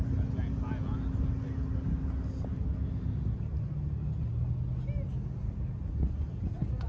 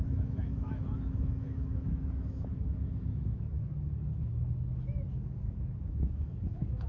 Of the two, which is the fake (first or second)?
second